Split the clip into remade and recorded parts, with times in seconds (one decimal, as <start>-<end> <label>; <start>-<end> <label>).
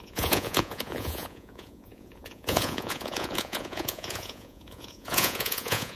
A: 0.0-6.0 remade